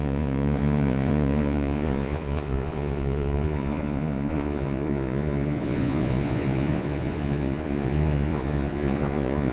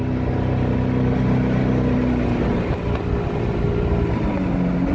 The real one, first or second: second